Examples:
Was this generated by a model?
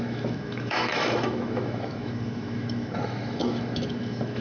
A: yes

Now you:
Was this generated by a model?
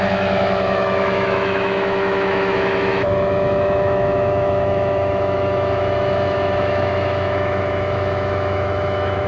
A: yes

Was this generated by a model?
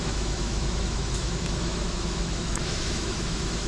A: yes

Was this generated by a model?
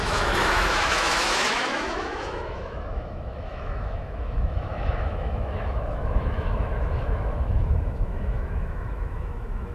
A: yes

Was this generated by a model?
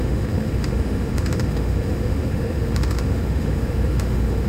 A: yes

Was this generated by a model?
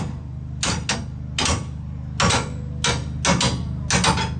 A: no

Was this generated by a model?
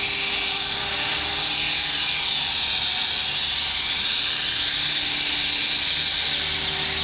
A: no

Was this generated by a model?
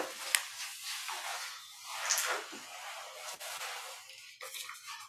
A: no